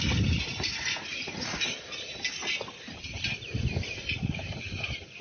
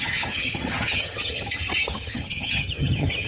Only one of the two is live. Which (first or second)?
first